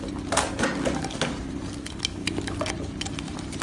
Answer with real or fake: real